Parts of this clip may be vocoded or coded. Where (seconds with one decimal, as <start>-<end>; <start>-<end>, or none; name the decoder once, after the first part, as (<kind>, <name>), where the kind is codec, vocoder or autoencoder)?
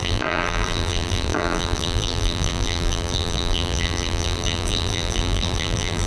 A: 0.0-6.1 (vocoder, BigVGAN v2)